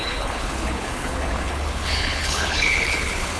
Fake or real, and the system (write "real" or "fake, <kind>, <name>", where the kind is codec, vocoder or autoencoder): fake, codec, HILCodec